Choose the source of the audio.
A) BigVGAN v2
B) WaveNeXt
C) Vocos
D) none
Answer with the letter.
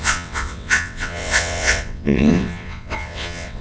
B